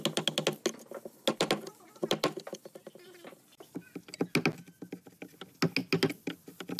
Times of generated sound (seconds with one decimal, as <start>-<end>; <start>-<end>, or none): none